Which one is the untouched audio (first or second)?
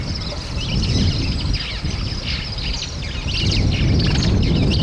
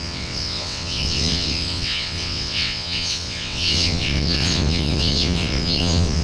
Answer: first